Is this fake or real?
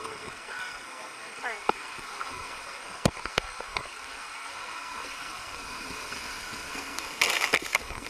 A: fake